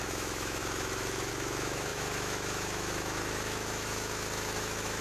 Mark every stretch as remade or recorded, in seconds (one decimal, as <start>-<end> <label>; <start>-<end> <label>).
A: 0.0-5.0 remade